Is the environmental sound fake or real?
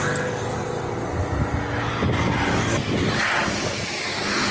real